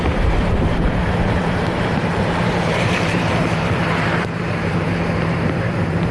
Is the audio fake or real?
fake